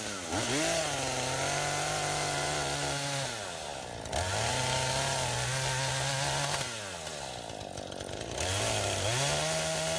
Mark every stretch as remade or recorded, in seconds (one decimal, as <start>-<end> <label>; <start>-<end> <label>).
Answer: 0.0-10.0 recorded